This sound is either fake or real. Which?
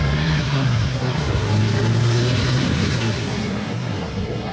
fake